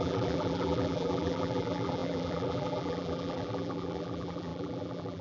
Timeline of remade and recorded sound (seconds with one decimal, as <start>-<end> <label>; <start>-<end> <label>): 0.0-5.2 remade